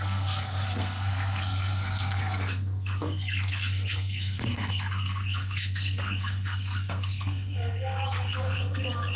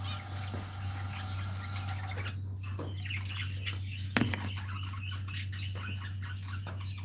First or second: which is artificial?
first